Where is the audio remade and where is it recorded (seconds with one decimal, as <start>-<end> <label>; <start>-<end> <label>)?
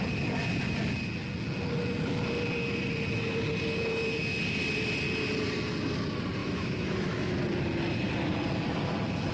0.0-3.7 recorded; 3.7-4.4 remade; 4.4-6.4 recorded; 6.4-7.3 remade; 7.3-9.3 recorded